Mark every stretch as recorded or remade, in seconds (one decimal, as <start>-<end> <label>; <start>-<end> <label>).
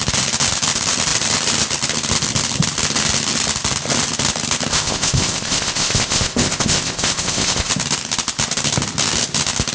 0.0-4.7 recorded; 4.7-7.7 remade; 7.7-9.7 recorded